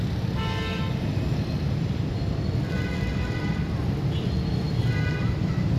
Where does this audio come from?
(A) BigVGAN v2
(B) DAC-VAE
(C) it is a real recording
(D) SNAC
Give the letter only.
C